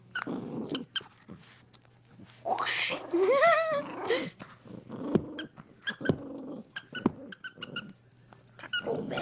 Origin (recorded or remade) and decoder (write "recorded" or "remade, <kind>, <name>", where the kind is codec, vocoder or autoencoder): recorded